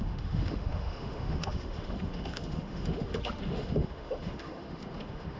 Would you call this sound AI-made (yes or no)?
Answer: yes